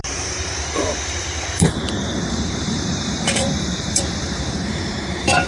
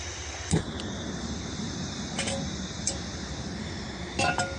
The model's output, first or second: first